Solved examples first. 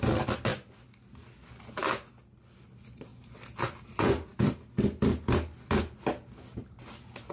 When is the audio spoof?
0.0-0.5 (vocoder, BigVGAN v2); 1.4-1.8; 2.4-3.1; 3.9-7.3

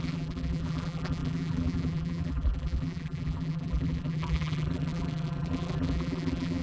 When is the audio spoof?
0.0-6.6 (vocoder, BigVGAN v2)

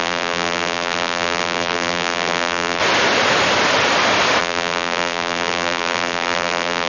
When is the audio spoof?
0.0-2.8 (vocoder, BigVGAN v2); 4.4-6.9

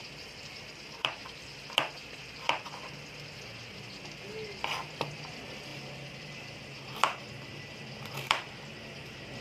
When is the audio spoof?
1.2-3.9 (vocoder, BigVGAN v2)

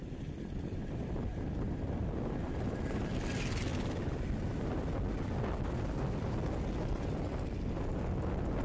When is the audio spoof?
0.0-1.3 (vocoder, BigVGAN v2); 3.7-4.3